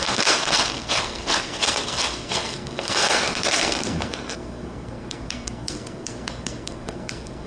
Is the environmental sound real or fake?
fake